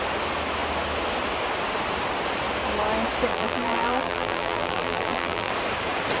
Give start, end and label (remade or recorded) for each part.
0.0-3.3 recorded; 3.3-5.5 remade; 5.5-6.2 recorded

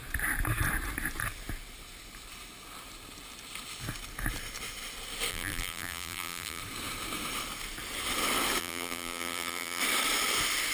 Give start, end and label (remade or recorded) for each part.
0.0-5.3 recorded; 5.3-6.6 remade; 6.6-8.6 recorded; 8.6-9.8 remade; 9.8-10.7 recorded

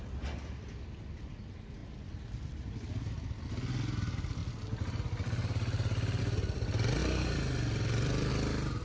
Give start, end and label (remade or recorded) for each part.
0.0-4.4 recorded; 4.4-6.2 remade; 6.2-7.0 recorded; 7.0-8.3 remade; 8.3-8.8 recorded

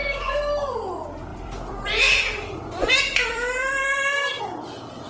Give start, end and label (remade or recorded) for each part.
0.0-1.3 recorded; 1.3-4.4 remade; 4.4-5.1 recorded

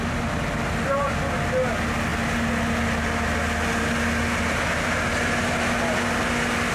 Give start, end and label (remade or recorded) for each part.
0.0-6.7 recorded